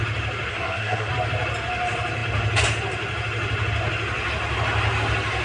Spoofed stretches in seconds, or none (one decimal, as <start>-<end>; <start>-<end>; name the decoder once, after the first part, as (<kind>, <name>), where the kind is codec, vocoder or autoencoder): 0.5-1.1 (codec, SNAC)